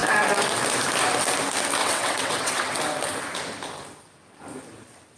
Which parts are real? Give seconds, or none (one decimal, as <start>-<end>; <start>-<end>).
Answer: 0.0-1.8; 2.8-5.2